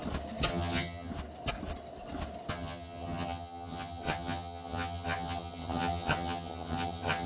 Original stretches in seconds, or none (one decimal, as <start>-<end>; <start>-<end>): 0.0-0.5; 1.1-2.5